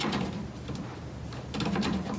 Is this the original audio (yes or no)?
yes